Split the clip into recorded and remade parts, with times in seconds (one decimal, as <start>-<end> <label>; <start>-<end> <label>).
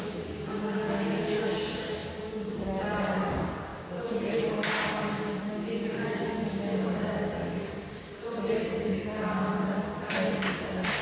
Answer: 0.0-9.5 remade; 9.5-10.1 recorded; 10.1-11.0 remade